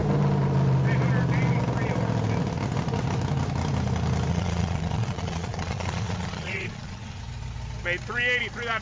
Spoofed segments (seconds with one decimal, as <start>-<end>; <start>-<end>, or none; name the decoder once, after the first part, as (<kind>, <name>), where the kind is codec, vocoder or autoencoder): 4.3-7.2 (vocoder, Vocos)